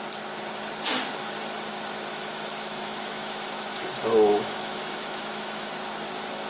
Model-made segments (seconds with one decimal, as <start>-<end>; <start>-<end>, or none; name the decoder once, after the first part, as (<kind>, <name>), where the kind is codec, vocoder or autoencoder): 2.1-5.7 (autoencoder, DAC-VAE)